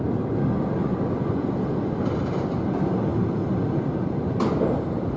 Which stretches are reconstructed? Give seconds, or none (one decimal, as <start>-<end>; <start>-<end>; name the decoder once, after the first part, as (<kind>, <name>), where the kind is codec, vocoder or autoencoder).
0.8-1.4 (vocoder, Vocos)